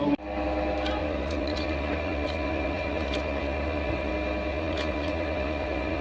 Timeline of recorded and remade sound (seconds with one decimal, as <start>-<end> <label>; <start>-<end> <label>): 0.0-1.0 recorded; 1.0-4.1 remade; 4.1-4.5 recorded; 4.5-6.0 remade